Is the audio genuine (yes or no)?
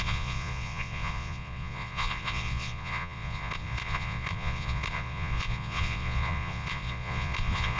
no